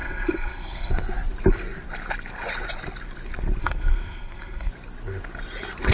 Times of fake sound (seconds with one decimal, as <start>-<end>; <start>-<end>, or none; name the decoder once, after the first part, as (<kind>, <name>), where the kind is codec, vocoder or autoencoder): 0.0-0.9 (codec, SNAC); 3.6-4.7